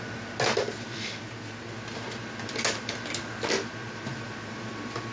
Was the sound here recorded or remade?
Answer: recorded